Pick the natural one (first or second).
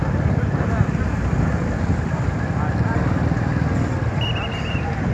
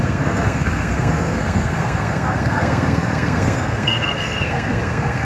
first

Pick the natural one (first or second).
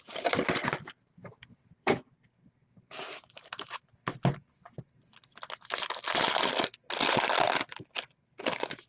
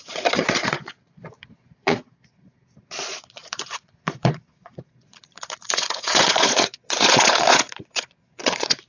first